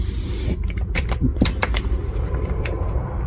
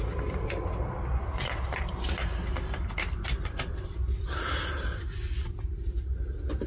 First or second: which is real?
second